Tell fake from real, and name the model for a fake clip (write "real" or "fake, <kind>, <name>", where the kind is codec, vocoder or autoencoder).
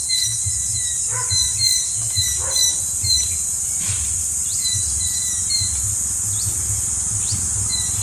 real